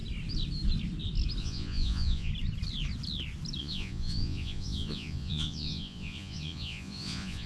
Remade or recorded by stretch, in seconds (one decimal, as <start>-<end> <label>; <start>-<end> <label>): 0.0-1.4 recorded; 1.4-2.3 remade; 2.3-3.6 recorded; 3.6-7.5 remade